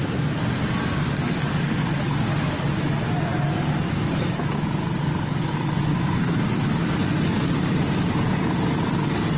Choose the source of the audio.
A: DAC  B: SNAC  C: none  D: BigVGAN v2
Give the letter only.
C